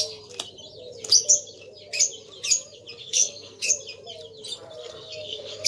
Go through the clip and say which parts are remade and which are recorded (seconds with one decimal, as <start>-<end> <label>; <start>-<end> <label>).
0.0-3.0 recorded; 3.0-3.7 remade; 3.7-4.8 recorded; 4.8-5.7 remade